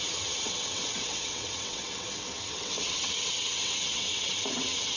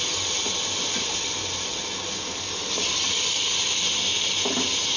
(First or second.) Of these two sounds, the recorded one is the second